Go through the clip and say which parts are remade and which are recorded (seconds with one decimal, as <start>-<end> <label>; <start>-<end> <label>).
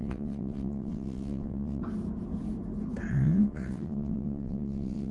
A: 0.0-1.8 remade; 1.8-3.1 recorded; 3.1-5.1 remade